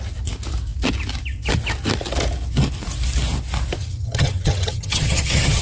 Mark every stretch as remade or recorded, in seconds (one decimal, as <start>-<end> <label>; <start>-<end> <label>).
0.0-3.8 recorded; 3.8-5.6 remade

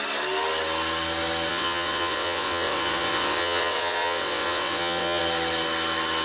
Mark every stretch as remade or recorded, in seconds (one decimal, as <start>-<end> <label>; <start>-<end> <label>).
0.0-1.5 recorded; 1.5-5.2 remade; 5.2-6.2 recorded

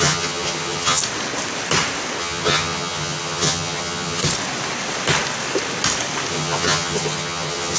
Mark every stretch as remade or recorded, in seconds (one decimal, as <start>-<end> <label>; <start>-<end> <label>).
0.0-1.0 remade; 1.0-2.2 recorded; 2.2-4.2 remade; 4.2-6.3 recorded; 6.3-7.8 remade